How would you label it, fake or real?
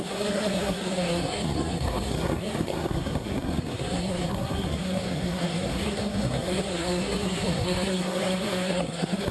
fake